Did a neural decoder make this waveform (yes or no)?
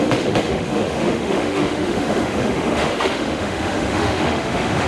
yes